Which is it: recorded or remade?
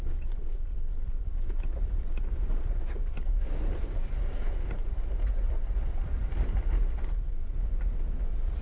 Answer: remade